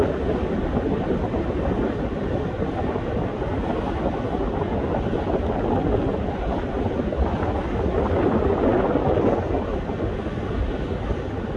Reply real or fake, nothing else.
real